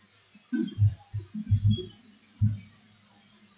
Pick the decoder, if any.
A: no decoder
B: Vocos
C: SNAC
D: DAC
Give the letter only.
A